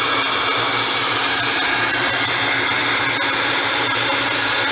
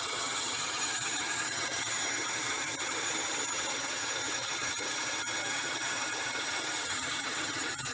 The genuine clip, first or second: first